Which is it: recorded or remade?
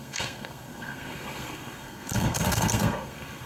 remade